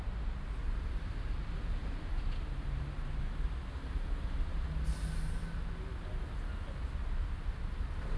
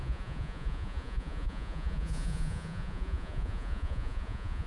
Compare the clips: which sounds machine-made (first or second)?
second